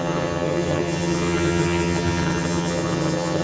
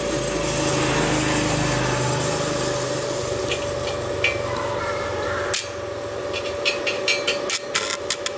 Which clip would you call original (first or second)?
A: second